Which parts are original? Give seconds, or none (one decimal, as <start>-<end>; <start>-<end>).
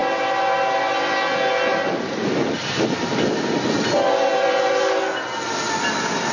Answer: 0.0-6.3